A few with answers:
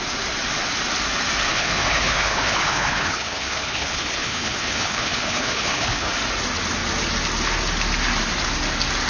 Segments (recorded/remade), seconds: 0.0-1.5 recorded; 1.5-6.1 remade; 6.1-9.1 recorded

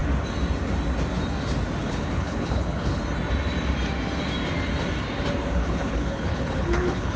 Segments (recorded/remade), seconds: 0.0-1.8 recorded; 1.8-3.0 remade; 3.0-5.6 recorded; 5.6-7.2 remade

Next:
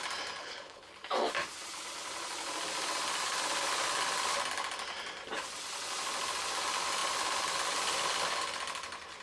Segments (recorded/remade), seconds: 0.0-0.4 recorded; 0.4-0.9 remade; 0.9-9.2 recorded